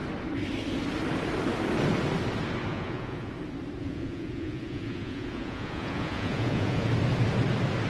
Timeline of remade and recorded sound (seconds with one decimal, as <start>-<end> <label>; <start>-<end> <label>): 0.0-2.7 recorded; 2.7-3.3 remade; 3.3-3.8 recorded; 3.8-6.9 remade; 6.9-7.9 recorded